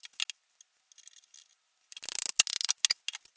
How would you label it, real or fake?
real